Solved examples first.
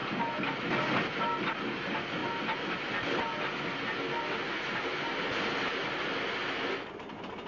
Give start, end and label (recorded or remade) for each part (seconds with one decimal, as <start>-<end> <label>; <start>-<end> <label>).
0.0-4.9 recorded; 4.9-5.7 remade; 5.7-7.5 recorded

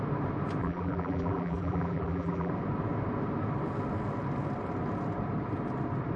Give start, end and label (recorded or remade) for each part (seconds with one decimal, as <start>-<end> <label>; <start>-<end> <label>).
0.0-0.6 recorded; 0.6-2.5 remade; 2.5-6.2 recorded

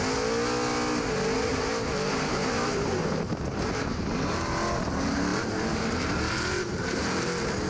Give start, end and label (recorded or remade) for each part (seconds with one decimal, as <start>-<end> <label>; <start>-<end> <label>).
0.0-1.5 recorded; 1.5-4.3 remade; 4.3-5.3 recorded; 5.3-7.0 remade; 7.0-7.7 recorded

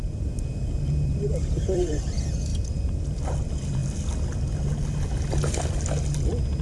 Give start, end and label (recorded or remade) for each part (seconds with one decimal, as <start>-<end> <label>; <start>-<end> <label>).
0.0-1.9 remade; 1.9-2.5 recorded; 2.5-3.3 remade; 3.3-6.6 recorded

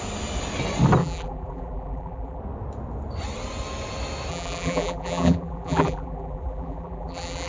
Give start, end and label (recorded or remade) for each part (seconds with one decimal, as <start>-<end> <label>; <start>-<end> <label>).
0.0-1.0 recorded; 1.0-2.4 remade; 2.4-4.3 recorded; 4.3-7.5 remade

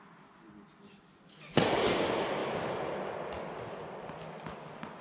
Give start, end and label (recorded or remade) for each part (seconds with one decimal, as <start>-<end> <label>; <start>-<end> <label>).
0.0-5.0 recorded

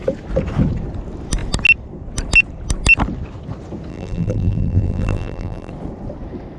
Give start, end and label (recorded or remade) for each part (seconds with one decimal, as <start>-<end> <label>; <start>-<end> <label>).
0.0-3.9 recorded; 3.9-5.7 remade; 5.7-6.6 recorded